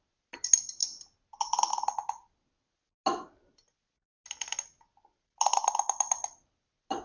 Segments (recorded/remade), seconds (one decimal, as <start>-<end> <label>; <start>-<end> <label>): 0.0-7.0 recorded